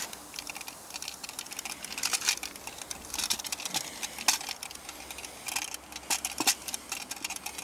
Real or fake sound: real